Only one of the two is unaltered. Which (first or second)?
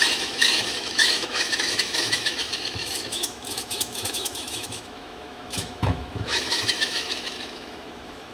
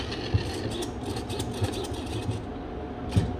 second